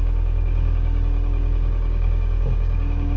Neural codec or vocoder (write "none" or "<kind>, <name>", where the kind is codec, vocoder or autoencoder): codec, DAC